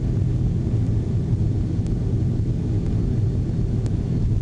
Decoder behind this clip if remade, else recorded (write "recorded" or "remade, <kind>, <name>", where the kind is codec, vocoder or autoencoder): recorded